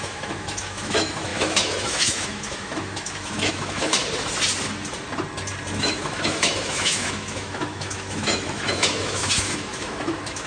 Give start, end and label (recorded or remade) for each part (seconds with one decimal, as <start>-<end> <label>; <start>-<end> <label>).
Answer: 0.0-4.0 remade; 4.0-5.8 recorded; 5.8-10.5 remade